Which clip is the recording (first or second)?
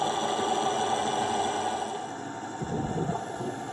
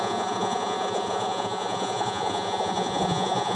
first